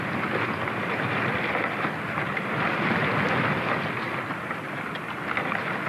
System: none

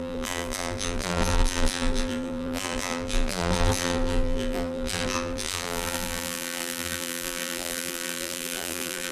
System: vocoder, BigVGAN v2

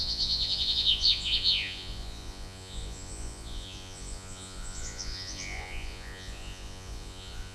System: vocoder, Vocos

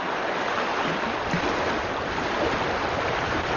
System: none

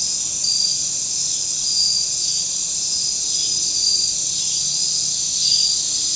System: none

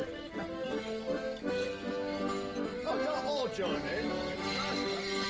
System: none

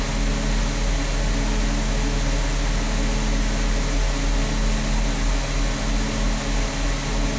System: none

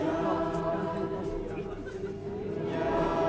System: none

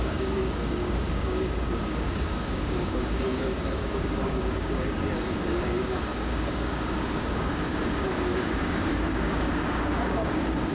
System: codec, DAC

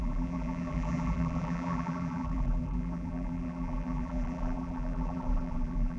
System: vocoder, BigVGAN v2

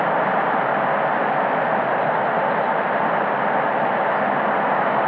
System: none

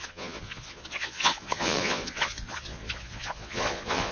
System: vocoder, Vocos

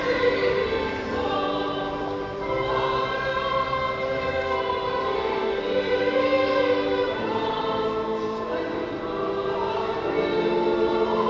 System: vocoder, BigVGAN v2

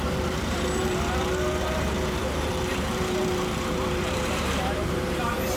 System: vocoder, BigVGAN v2